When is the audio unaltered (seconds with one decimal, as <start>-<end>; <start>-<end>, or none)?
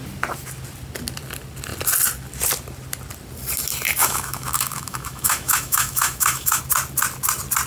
0.0-4.0; 6.6-7.7